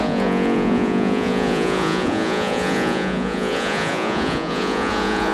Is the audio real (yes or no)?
no